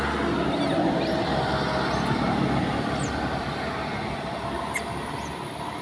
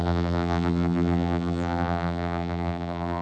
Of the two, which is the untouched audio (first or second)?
first